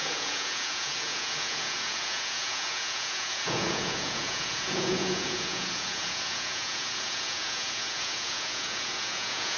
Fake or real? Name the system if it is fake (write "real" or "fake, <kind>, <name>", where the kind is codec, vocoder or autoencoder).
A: fake, vocoder, Vocos